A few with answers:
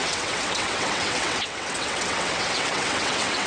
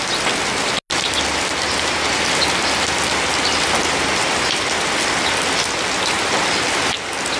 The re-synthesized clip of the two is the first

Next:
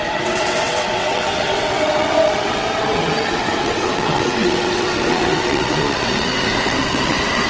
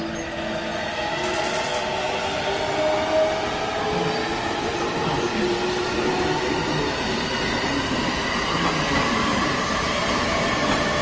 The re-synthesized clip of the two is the first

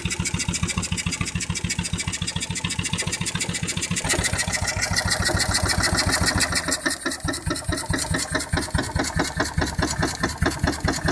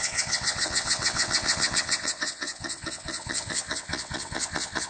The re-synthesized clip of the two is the second